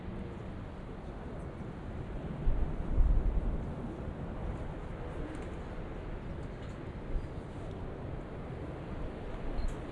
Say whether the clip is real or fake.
real